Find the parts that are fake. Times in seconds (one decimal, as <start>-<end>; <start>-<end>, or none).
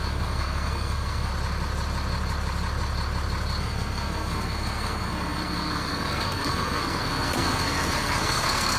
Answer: 0.0-1.3; 3.6-8.8